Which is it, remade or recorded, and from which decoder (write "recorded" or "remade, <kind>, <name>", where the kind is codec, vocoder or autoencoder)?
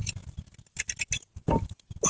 recorded